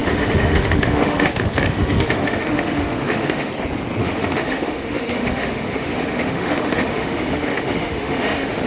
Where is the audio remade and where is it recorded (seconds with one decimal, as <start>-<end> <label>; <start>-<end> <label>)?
0.0-3.5 remade; 3.5-4.0 recorded; 4.0-8.7 remade